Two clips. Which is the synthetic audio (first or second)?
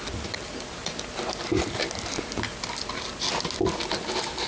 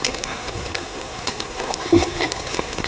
second